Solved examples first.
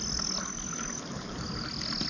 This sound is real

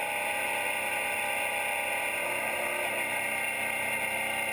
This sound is real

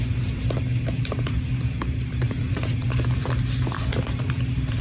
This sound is fake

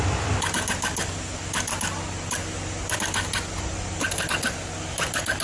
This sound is real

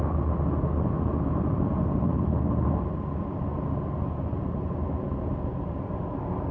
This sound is real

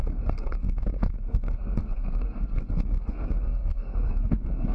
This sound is fake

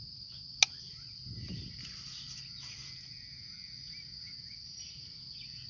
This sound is real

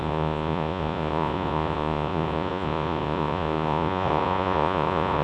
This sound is fake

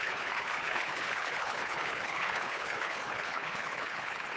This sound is fake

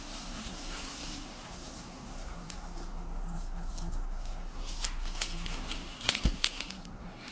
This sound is fake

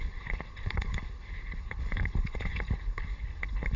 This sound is fake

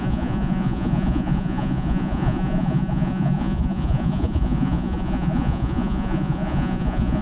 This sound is fake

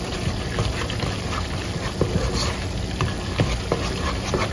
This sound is real